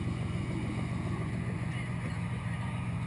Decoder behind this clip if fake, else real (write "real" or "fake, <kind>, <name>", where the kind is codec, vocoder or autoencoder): fake, vocoder, Vocos